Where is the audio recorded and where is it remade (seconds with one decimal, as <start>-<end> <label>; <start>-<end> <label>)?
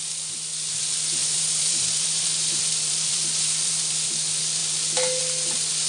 0.0-1.2 recorded; 1.2-3.8 remade; 3.8-5.9 recorded